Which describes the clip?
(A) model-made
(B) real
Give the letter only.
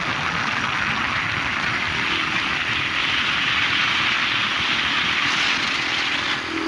B